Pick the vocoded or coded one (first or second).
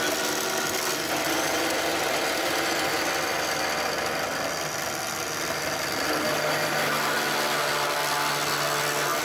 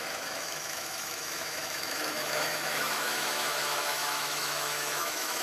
second